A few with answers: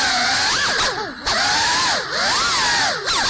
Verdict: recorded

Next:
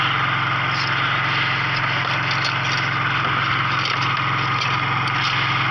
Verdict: recorded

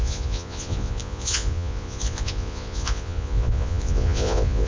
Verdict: remade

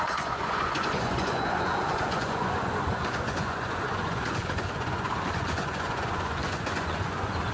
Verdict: remade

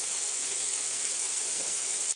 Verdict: remade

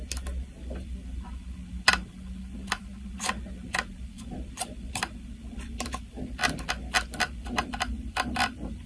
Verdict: recorded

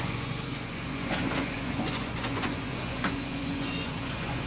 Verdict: remade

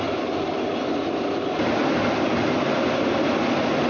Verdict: recorded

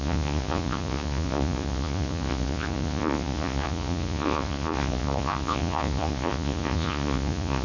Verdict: remade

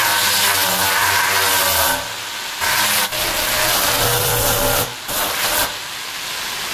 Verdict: recorded